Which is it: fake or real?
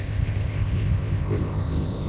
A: fake